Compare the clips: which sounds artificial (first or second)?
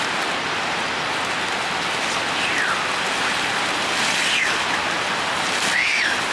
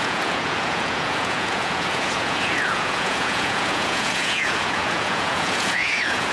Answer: second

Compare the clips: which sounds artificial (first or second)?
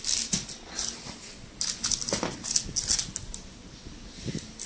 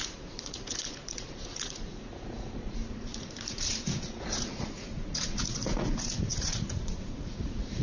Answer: second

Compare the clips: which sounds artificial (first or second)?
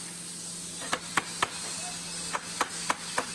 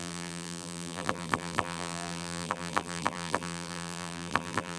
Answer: second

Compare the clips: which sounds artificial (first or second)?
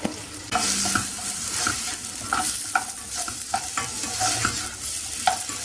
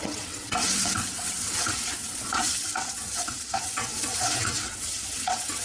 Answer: second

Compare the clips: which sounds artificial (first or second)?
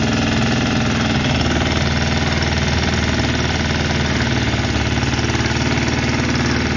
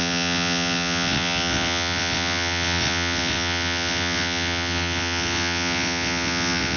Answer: second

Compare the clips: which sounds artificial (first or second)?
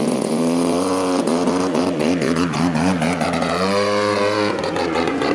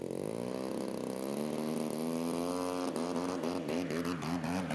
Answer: first